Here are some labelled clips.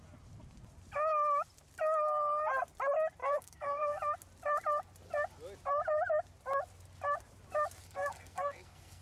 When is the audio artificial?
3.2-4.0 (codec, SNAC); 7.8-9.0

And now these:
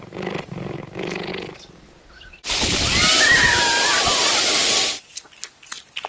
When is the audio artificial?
none

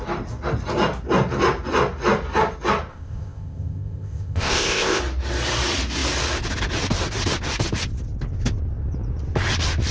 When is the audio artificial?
2.9-5.0 (codec, ZipCodec)

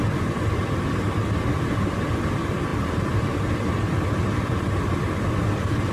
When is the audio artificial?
none

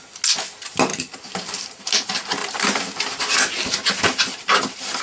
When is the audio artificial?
0.9-1.8 (vocoder, BigVGAN v2); 2.4-3.2

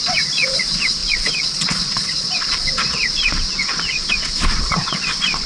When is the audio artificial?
0.0-5.5 (vocoder, Vocos)